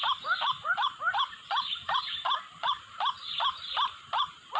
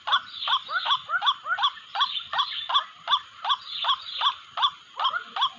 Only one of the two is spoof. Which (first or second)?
first